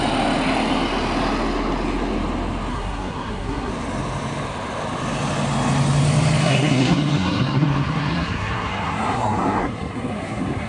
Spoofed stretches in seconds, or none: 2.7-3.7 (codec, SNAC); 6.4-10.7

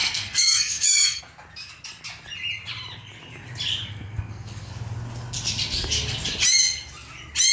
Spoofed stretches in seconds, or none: 0.0-1.2 (codec, SNAC); 3.9-4.7

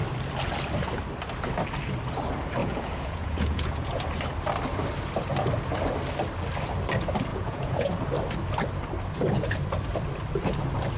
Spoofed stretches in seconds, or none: 2.6-4.0 (vocoder, Vocos); 7.3-8.0